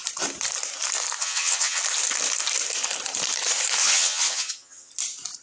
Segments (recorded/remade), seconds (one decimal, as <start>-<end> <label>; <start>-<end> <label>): 0.0-1.2 recorded; 1.2-1.8 remade; 1.8-3.8 recorded; 3.8-4.9 remade; 4.9-5.4 recorded